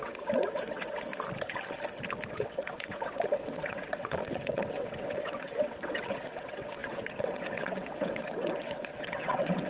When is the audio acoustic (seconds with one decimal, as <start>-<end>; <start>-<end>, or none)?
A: 1.1-2.3